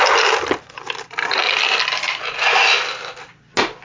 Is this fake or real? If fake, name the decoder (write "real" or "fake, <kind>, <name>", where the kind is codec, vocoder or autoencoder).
real